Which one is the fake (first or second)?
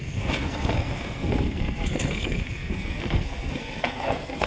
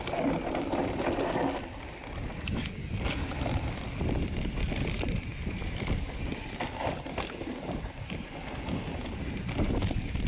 first